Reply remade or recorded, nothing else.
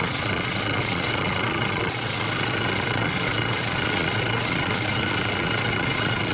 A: remade